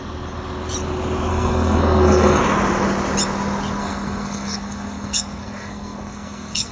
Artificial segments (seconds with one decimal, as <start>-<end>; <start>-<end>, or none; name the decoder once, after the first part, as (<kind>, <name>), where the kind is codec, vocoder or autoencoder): 1.3-2.4 (codec, SNAC); 3.8-6.7